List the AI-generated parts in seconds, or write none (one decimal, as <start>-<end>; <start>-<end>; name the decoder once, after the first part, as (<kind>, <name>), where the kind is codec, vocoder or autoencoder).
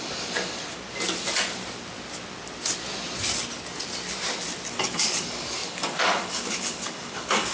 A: 0.0-0.6 (codec, DAC); 4.7-7.5